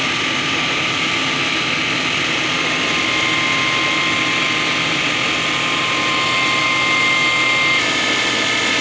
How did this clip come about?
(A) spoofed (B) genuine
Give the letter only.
B